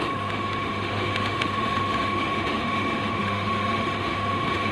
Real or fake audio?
fake